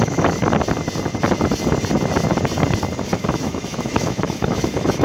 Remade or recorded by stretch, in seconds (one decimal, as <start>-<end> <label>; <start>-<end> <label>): 0.0-0.4 remade; 0.4-3.0 recorded; 3.0-5.0 remade